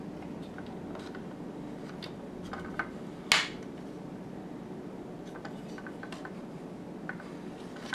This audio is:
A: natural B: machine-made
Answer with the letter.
A